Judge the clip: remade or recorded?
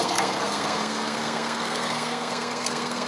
remade